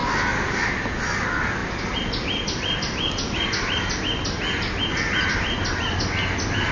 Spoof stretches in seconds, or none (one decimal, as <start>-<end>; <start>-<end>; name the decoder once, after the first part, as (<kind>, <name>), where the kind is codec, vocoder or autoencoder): none